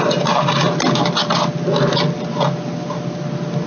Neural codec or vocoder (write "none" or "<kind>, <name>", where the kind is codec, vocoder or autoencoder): none